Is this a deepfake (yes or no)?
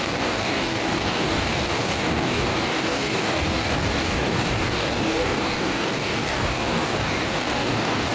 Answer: yes